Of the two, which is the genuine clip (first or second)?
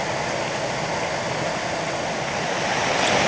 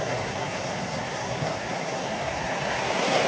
first